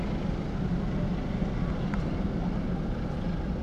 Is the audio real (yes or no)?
yes